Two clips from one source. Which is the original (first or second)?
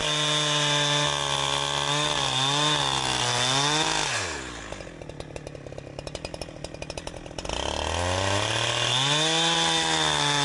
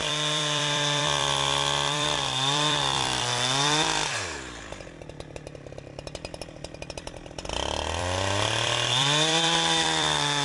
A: first